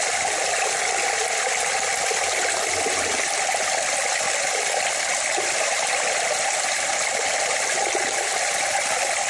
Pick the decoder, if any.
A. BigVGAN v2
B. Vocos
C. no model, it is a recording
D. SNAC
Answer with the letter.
C